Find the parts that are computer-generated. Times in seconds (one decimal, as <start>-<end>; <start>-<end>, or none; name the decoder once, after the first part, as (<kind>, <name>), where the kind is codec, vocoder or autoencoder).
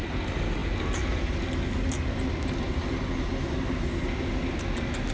none